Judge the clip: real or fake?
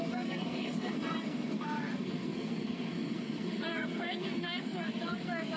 fake